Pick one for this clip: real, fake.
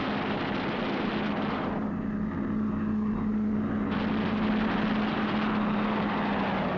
real